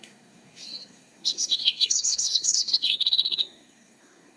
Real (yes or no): no